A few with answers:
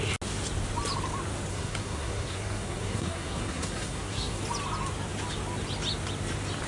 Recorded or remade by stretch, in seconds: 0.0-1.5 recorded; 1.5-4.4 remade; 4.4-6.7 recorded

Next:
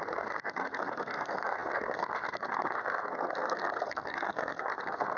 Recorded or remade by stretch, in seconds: 0.0-5.2 remade